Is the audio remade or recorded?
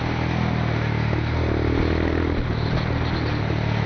recorded